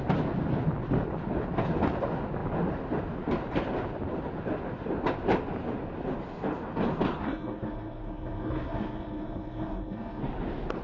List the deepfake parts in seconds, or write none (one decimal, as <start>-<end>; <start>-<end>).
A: 7.2-10.2